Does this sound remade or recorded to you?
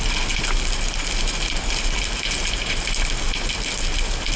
recorded